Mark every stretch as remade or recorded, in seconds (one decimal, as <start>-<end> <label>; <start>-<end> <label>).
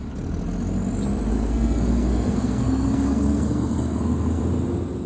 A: 0.0-1.3 recorded; 1.3-4.4 remade; 4.4-5.1 recorded